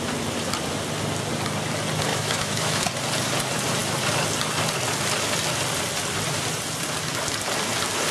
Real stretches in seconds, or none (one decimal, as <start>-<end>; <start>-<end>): 0.0-2.1; 2.9-8.1